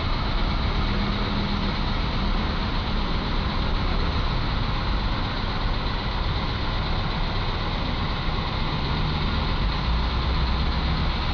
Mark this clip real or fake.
real